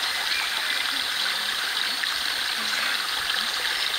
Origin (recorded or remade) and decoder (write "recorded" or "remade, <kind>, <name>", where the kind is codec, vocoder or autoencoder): recorded